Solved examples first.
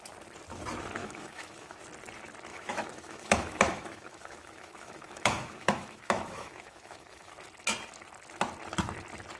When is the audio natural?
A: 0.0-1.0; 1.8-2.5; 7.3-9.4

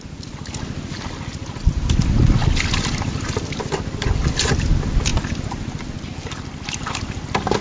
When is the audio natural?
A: 0.0-7.6

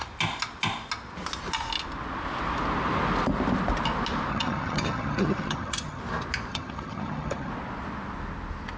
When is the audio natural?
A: 0.0-4.3; 6.0-6.5; 7.5-8.8

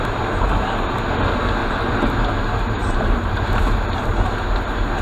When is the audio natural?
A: 0.0-1.6; 2.1-2.8; 3.4-5.0

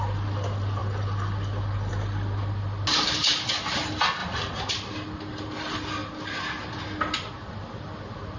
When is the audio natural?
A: 0.0-8.4

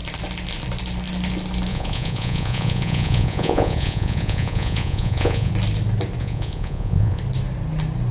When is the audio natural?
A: 0.0-1.7; 5.5-6.2; 7.2-8.1